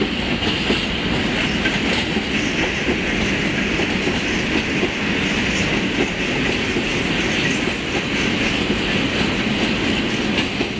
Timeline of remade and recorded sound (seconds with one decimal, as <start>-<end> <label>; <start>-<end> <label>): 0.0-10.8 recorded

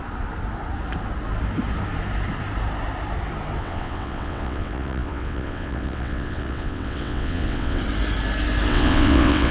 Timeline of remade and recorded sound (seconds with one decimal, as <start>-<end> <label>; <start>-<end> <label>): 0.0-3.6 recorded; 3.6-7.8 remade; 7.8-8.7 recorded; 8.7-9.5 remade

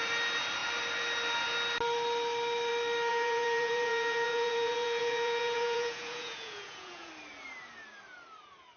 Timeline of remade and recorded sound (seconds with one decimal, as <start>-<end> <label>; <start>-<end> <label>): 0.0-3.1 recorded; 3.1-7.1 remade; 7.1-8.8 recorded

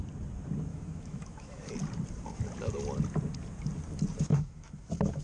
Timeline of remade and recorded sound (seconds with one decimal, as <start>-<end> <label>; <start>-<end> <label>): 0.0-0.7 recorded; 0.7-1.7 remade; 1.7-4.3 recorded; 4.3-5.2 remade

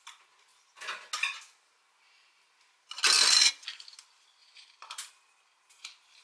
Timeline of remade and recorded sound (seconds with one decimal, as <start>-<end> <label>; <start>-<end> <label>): 0.0-6.2 recorded

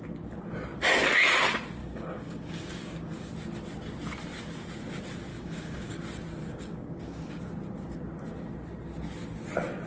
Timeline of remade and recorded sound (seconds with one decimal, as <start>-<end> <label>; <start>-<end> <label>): 0.0-1.8 recorded; 1.8-3.3 remade; 3.3-5.3 recorded; 5.3-6.0 remade; 6.0-6.4 recorded; 6.4-7.4 remade; 7.4-9.9 recorded